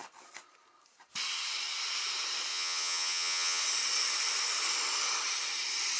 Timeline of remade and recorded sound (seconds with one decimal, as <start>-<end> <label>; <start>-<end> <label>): 0.0-2.5 recorded; 2.5-3.6 remade; 3.6-6.0 recorded